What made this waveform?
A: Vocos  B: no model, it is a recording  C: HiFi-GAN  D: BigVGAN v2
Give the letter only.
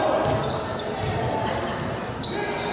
B